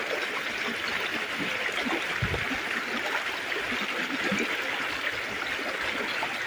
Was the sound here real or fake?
real